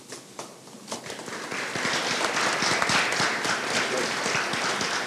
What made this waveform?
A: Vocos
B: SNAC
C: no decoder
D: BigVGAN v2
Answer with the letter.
C